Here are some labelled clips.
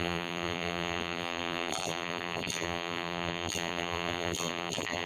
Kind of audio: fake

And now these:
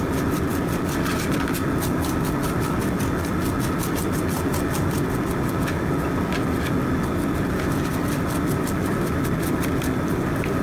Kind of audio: real